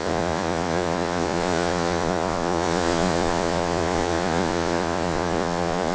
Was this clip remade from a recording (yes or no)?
yes